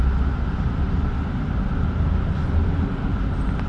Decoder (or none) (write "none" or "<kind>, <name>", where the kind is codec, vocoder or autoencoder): none